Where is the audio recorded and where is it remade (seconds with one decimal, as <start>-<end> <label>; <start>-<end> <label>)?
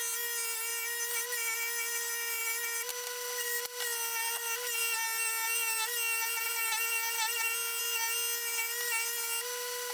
0.0-9.9 recorded